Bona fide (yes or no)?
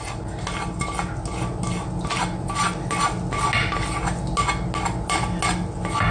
yes